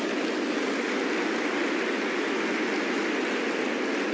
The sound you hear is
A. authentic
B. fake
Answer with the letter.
A